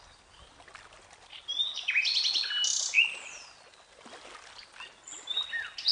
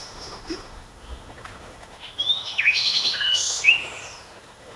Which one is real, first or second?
first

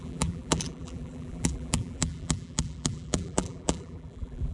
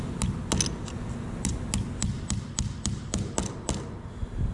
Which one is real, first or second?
second